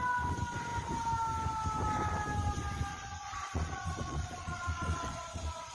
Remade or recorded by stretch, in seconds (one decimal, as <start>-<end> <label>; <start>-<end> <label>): 0.0-2.9 recorded; 2.9-5.7 remade